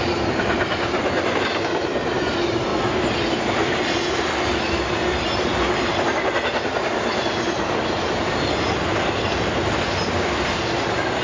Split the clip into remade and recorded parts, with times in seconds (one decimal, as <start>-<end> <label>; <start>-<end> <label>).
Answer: 0.0-11.2 recorded